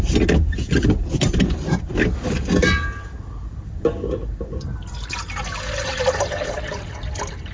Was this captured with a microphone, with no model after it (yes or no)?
yes